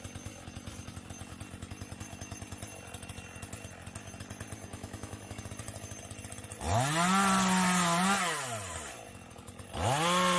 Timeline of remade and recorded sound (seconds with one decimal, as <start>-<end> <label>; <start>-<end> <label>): 0.0-4.7 recorded; 4.7-5.4 remade; 5.4-10.4 recorded

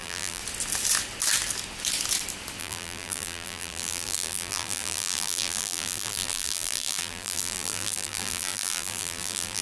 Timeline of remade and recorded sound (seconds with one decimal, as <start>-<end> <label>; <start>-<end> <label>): 0.0-0.4 remade; 0.4-2.6 recorded; 2.6-9.6 remade

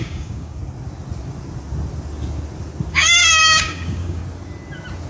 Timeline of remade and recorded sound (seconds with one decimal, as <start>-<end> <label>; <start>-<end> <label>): 0.0-0.6 remade; 0.6-2.9 recorded; 2.9-4.2 remade; 4.2-5.1 recorded